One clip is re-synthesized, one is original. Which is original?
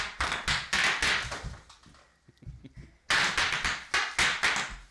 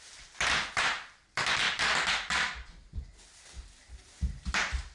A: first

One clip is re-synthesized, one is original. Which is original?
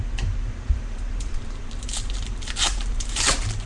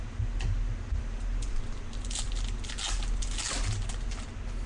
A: second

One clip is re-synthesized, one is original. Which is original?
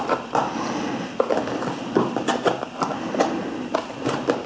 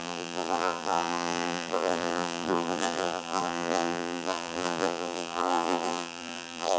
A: first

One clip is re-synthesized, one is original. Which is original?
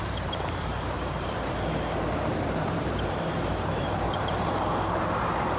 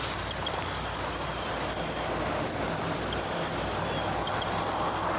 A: second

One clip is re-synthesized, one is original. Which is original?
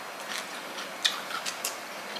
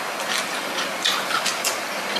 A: first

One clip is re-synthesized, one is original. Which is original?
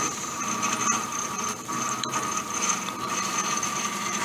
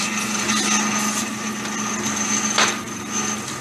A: second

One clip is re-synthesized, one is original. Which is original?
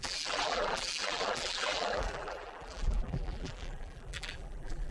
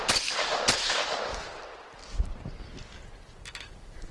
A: second